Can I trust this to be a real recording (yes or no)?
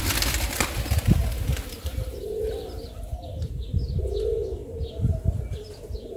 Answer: yes